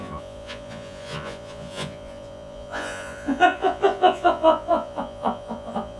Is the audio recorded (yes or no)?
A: no